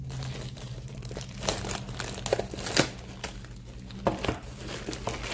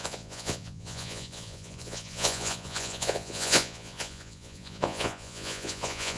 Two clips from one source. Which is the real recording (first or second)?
first